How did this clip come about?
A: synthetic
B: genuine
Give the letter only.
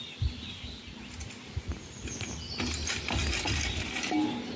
B